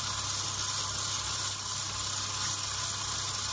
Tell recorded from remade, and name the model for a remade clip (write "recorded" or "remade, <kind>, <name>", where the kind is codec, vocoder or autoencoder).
recorded